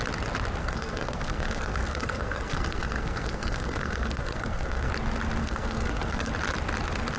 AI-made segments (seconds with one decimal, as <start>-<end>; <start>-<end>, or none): 0.6-4.9; 5.4-6.3